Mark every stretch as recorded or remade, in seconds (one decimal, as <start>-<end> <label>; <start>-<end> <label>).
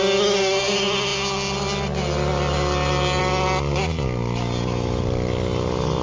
0.0-6.0 recorded